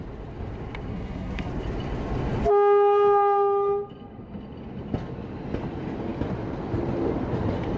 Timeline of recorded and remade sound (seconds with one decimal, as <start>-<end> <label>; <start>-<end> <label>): 0.0-0.9 recorded; 0.9-1.5 remade; 1.5-7.8 recorded